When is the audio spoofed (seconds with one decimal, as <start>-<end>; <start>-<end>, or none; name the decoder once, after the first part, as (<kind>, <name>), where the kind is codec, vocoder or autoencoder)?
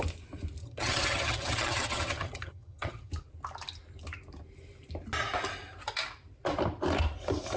0.6-3.1 (vocoder, HiFi-GAN)